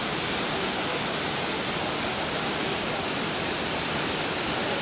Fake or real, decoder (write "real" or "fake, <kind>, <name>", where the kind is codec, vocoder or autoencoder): real